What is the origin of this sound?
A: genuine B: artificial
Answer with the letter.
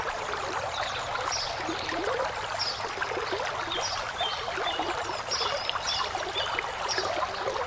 A